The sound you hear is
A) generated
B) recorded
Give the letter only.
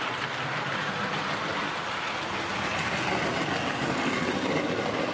B